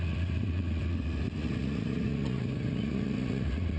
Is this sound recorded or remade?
remade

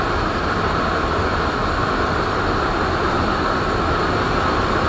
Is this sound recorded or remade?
recorded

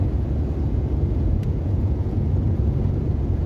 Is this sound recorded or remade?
remade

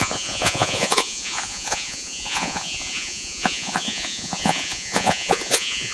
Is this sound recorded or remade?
remade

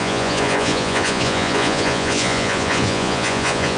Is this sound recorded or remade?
remade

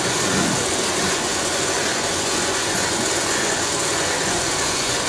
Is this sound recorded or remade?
remade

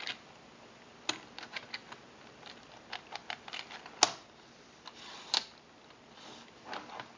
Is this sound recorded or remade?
recorded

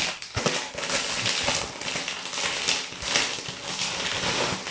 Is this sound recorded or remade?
recorded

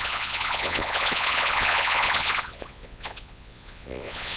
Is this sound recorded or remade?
remade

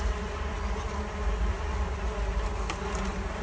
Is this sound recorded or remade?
recorded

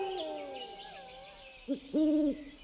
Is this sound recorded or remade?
recorded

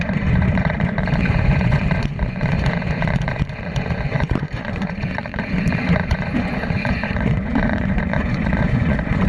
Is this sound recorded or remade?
remade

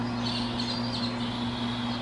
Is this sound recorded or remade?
recorded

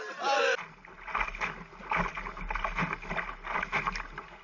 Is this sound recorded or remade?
recorded